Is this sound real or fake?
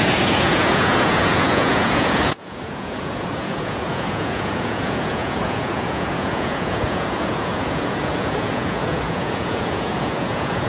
fake